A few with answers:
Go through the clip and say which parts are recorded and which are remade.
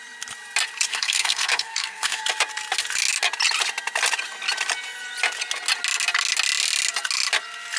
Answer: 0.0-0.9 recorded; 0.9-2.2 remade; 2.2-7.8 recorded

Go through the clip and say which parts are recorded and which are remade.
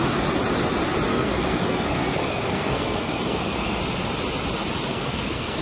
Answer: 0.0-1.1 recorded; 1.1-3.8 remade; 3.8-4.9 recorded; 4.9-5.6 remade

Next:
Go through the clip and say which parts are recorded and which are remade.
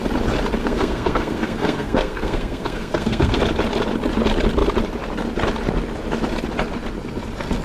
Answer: 0.0-0.6 recorded; 0.6-3.4 remade; 3.4-7.6 recorded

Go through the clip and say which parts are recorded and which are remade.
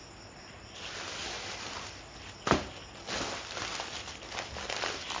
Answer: 0.0-5.2 recorded